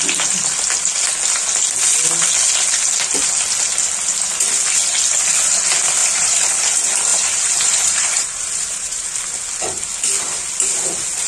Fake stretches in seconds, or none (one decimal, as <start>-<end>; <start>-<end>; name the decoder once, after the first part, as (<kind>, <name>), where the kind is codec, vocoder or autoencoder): 6.0-6.5 (vocoder, BigVGAN v2); 7.1-9.0